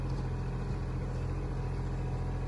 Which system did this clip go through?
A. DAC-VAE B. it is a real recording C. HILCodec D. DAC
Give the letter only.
B